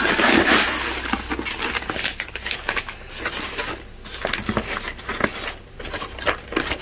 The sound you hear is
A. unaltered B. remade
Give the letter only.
A